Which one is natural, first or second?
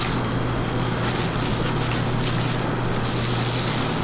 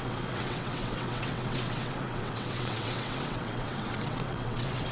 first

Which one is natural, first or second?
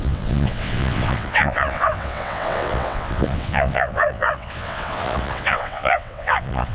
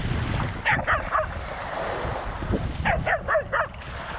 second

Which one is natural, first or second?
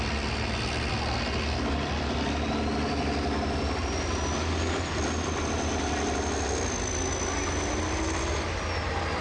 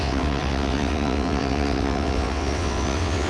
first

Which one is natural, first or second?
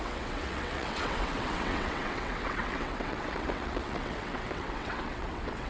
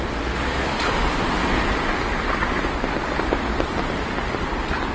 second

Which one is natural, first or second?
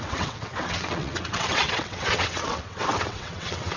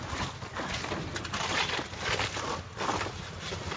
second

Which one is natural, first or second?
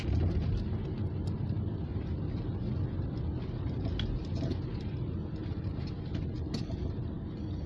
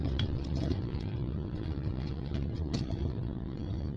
first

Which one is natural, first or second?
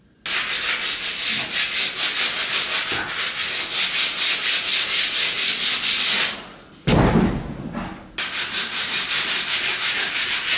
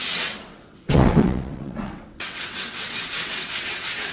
first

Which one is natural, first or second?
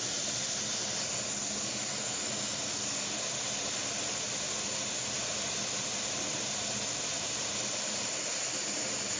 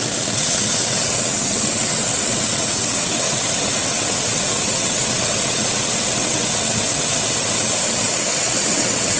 first